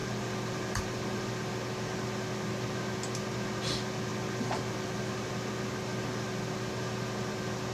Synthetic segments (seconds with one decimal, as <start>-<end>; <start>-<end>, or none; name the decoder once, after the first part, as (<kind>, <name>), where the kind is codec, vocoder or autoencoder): 0.0-1.3 (vocoder, BigVGAN v2); 4.1-5.3